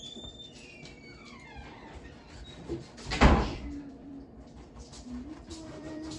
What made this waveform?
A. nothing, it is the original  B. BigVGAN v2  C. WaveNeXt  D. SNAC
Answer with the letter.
B